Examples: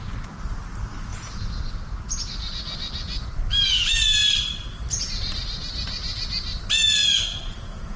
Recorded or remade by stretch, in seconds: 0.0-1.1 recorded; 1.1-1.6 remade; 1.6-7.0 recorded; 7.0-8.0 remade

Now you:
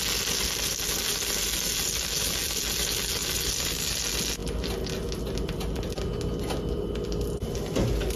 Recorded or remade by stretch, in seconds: 0.0-8.2 recorded

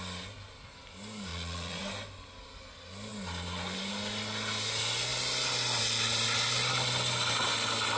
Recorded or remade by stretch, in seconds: 0.0-1.3 recorded; 1.3-1.8 remade; 1.8-8.0 recorded

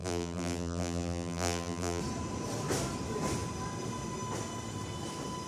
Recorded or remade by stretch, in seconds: 0.0-2.0 remade; 2.0-5.5 recorded

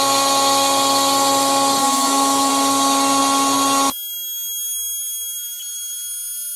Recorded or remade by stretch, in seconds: 0.0-1.8 recorded; 1.8-2.5 remade; 2.5-6.6 recorded

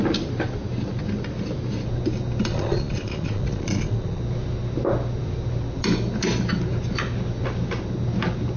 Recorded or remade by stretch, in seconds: 0.0-2.5 recorded; 2.5-4.2 remade; 4.2-8.6 recorded